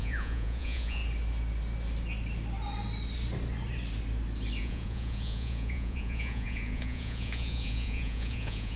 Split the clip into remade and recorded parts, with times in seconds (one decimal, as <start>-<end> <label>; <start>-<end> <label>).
0.0-1.0 remade; 1.0-4.6 recorded; 4.6-8.8 remade